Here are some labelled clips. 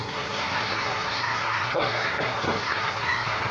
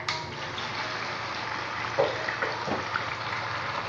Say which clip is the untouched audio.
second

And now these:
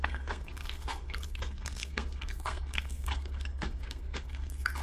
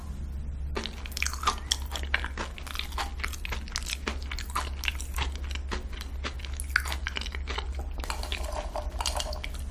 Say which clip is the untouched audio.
second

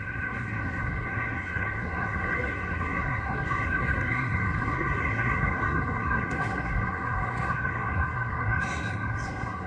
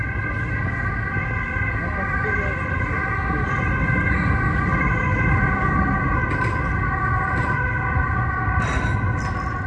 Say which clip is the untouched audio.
second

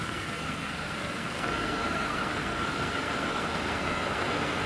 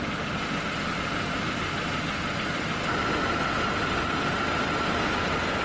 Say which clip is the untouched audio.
second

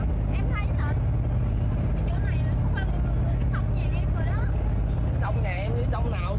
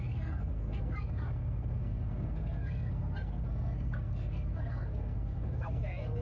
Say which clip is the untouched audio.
first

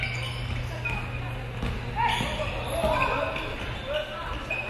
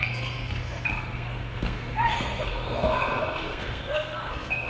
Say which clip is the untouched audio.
first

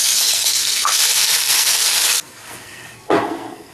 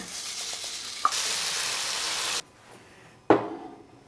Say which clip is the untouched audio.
second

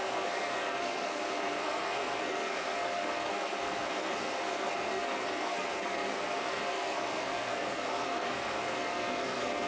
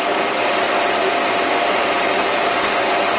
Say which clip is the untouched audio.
second